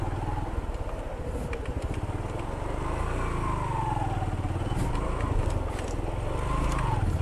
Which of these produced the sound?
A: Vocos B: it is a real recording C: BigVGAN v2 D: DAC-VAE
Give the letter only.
B